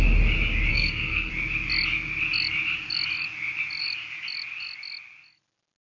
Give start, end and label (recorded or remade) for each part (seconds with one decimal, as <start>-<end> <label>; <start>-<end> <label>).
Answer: 0.0-0.7 recorded; 0.7-1.3 remade; 1.3-6.0 recorded